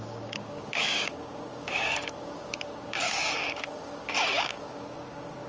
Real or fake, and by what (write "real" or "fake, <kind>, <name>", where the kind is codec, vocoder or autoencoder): fake, codec, DAC